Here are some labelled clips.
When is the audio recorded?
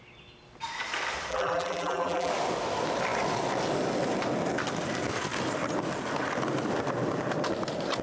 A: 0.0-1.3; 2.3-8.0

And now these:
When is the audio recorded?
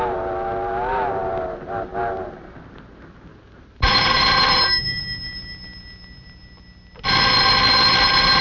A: 0.0-3.3; 5.0-8.4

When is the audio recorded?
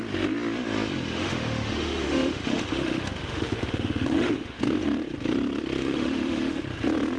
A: 0.0-1.1; 4.6-5.8; 6.6-7.2